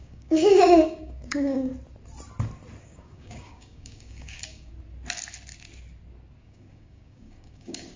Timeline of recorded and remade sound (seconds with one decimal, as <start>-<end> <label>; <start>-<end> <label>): 0.0-1.7 remade; 1.7-2.8 recorded; 2.8-4.7 remade; 4.7-6.4 recorded; 6.4-8.0 remade